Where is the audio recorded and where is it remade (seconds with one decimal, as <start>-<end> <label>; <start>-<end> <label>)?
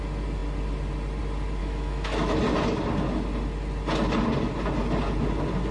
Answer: 0.0-1.6 recorded; 1.6-2.4 remade; 2.4-5.7 recorded